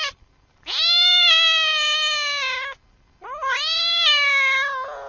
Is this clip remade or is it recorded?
recorded